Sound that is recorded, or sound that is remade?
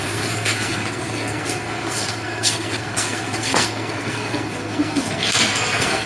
remade